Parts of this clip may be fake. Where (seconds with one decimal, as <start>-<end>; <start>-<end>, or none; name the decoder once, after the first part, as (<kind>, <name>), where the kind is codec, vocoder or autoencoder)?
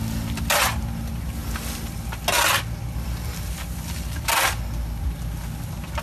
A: none